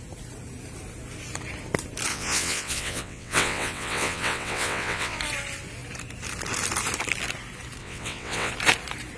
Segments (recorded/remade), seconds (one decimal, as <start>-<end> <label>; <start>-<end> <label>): 0.0-2.1 recorded; 2.1-5.2 remade; 5.2-7.8 recorded; 7.8-8.5 remade; 8.5-9.2 recorded